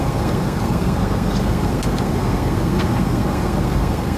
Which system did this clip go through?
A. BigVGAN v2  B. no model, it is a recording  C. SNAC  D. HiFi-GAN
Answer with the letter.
C